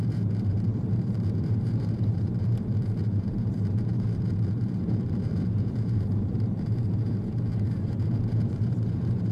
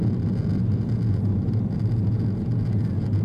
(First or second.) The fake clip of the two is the first